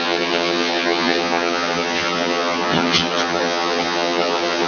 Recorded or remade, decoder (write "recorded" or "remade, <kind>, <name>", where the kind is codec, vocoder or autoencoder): remade, vocoder, HiFi-GAN